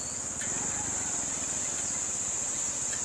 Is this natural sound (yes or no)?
yes